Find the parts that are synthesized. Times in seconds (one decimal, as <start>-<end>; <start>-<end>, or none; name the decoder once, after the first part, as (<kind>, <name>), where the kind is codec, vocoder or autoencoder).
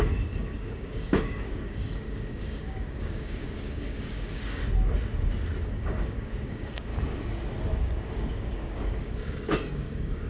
0.0-4.6 (codec, DAC); 5.6-6.9; 7.8-10.3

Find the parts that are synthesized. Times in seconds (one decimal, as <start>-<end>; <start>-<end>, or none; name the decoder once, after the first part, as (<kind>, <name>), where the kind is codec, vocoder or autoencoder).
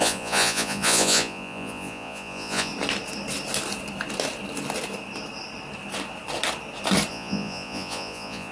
0.0-2.7 (vocoder, Vocos); 7.1-8.5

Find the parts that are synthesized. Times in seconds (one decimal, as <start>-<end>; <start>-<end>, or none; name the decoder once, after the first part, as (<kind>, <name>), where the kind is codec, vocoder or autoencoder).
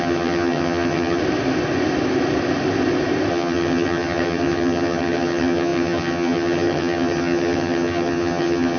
0.0-1.2 (vocoder, HiFi-GAN); 3.3-8.8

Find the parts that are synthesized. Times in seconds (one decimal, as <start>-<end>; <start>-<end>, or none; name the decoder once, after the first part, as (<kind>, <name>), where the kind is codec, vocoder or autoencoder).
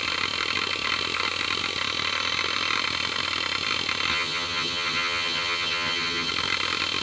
4.1-6.3 (vocoder, HiFi-GAN)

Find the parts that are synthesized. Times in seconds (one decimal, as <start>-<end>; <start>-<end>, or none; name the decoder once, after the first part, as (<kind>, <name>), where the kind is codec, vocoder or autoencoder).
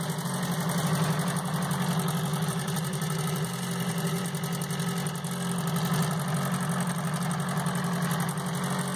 2.3-4.2 (vocoder, BigVGAN v2)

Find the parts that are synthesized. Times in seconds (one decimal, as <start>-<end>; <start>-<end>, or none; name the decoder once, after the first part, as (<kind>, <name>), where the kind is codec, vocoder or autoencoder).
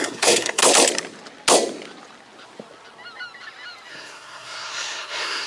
0.0-0.6 (codec, SNAC); 3.9-5.5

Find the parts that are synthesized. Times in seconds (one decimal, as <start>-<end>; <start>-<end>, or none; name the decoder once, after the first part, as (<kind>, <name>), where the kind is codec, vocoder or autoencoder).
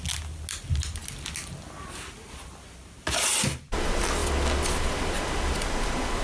none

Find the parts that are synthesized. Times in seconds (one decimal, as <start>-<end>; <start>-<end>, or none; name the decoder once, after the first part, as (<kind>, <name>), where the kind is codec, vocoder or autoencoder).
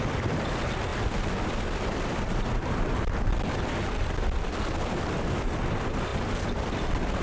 0.9-5.2 (vocoder, BigVGAN v2); 6.1-7.2